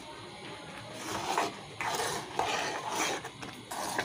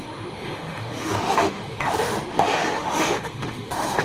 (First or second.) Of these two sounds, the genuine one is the first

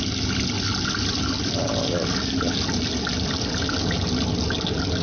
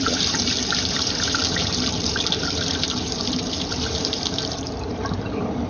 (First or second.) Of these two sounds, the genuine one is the first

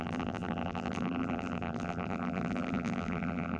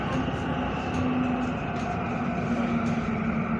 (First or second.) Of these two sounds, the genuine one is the second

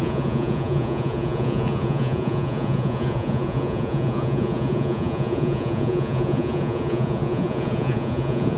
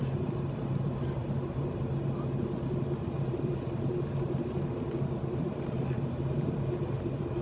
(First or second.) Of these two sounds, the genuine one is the second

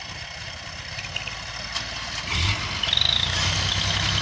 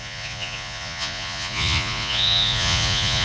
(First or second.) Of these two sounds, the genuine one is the first